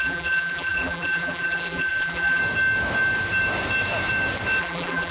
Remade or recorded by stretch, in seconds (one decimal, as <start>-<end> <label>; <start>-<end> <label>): 0.0-2.4 remade; 2.4-4.6 recorded; 4.6-5.1 remade